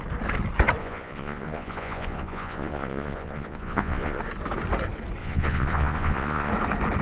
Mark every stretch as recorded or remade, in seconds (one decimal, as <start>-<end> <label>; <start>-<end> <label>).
0.0-0.8 recorded; 0.8-4.2 remade; 4.2-5.2 recorded; 5.2-6.5 remade; 6.5-7.0 recorded